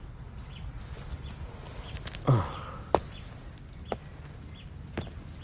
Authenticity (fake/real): real